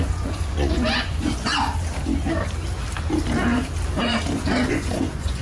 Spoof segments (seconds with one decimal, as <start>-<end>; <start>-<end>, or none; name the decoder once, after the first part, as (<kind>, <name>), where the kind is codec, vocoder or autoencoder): 0.0-1.5 (vocoder, Vocos); 4.7-5.4